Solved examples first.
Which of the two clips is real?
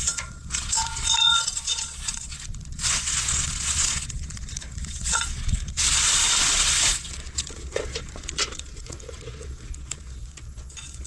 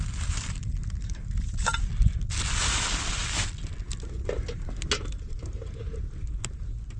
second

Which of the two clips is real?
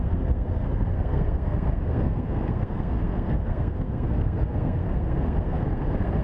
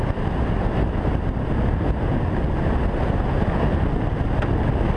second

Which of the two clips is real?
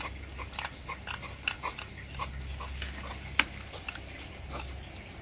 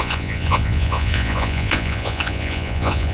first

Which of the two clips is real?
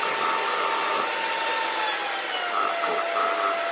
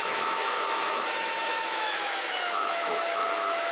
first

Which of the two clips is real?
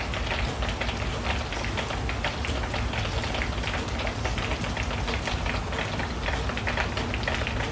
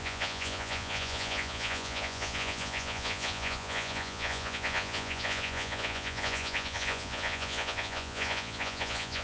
first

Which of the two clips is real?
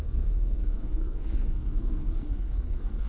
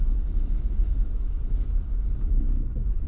second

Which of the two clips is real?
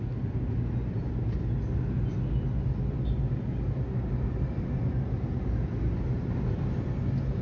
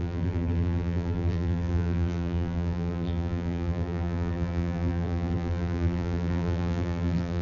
first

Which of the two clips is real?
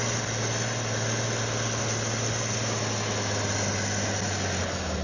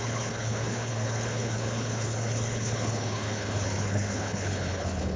first